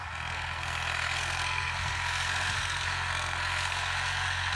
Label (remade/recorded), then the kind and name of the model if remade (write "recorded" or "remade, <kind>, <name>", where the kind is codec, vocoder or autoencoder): remade, codec, SNAC